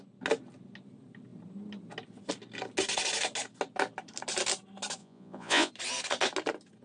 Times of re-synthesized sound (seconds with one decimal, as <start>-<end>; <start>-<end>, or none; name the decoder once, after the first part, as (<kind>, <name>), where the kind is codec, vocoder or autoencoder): 5.0-5.7 (vocoder, Vocos)